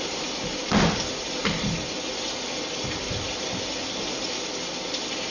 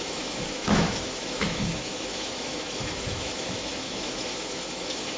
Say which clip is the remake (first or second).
second